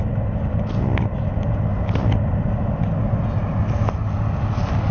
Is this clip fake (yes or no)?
no